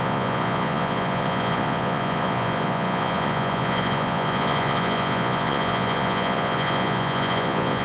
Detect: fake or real fake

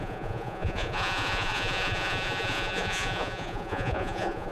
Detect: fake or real fake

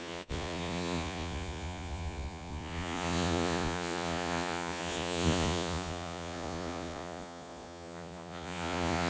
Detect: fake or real fake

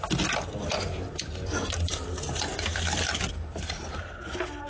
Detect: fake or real real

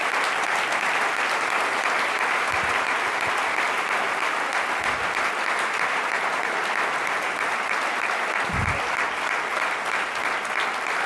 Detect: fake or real real